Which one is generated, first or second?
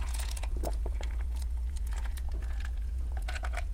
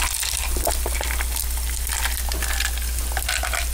first